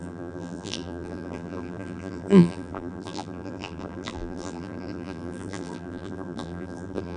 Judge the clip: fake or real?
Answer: fake